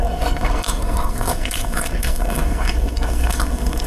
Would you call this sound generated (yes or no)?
yes